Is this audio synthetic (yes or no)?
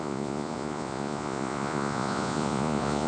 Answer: yes